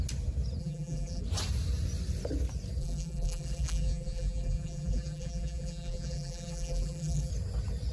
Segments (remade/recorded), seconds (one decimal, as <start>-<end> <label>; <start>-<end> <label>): 0.0-0.6 recorded; 0.6-1.2 remade; 1.2-2.8 recorded; 2.8-7.3 remade; 7.3-7.9 recorded